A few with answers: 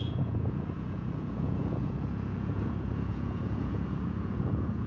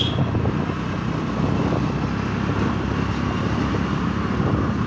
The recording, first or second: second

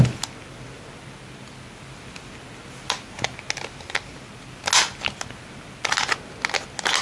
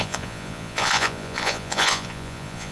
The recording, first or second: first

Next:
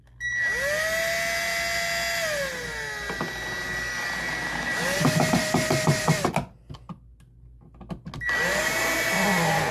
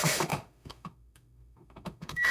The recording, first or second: first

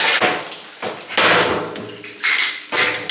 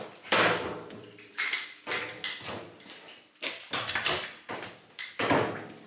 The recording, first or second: first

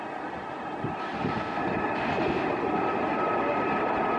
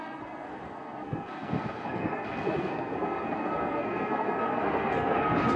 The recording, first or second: first